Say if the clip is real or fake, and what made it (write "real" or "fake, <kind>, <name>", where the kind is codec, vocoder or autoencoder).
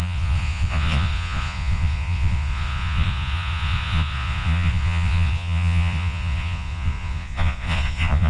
fake, vocoder, Vocos